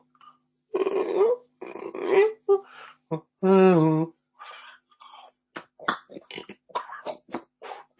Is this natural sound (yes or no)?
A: yes